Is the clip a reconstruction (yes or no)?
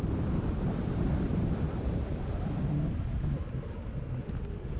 no